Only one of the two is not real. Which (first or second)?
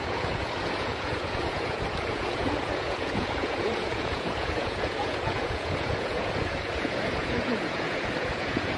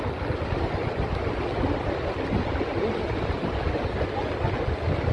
first